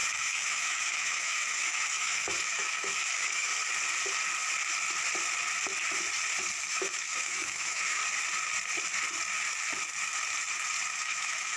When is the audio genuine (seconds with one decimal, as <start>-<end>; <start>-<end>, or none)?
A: 3.5-6.7; 8.0-10.9